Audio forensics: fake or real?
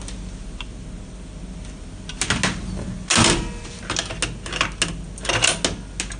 real